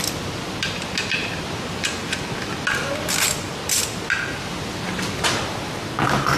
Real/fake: real